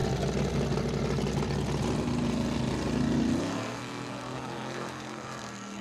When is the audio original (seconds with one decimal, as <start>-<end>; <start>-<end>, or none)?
0.0-3.4